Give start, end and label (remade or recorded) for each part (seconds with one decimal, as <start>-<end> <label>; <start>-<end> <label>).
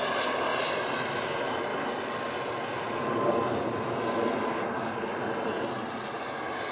0.0-6.7 recorded